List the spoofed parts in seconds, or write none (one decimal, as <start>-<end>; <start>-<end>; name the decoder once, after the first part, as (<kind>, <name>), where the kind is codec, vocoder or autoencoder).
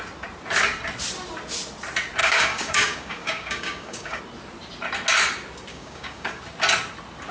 2.2-4.2 (codec, DAC); 5.7-6.4